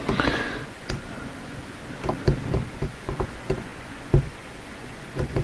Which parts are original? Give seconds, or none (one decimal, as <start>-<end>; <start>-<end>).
1.8-2.7